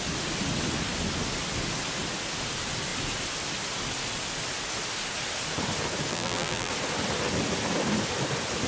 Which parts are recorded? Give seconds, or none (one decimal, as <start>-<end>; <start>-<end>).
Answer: 0.0-6.1; 6.7-8.7